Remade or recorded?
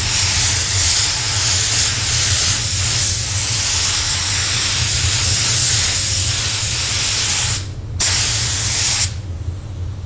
recorded